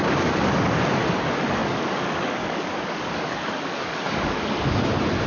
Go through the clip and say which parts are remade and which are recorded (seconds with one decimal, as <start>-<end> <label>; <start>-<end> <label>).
0.0-0.8 remade; 0.8-1.6 recorded; 1.6-4.8 remade; 4.8-5.3 recorded